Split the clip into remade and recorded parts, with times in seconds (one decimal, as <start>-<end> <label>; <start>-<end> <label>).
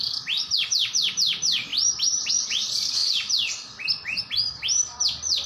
0.0-1.7 recorded; 1.7-2.3 remade; 2.3-5.5 recorded